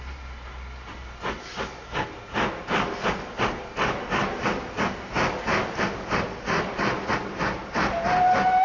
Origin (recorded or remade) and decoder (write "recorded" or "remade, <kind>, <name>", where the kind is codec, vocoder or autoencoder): recorded